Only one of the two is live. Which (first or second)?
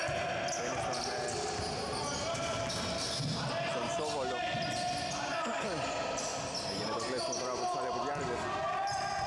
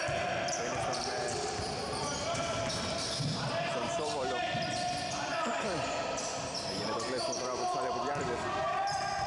first